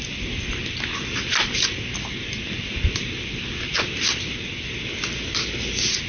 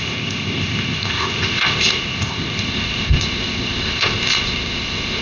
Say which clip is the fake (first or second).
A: second